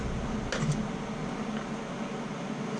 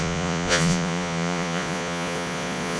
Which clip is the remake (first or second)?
second